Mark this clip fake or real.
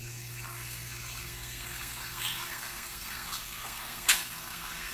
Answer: fake